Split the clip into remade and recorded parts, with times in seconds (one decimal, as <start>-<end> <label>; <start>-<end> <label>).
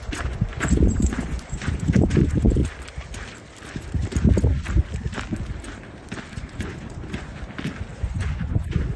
0.0-2.6 remade; 2.6-6.3 recorded; 6.3-7.3 remade; 7.3-7.9 recorded; 7.9-9.0 remade